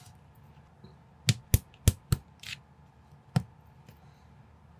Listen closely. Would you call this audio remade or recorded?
recorded